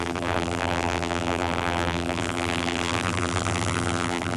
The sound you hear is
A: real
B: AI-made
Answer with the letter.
B